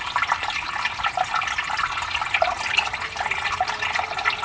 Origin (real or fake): real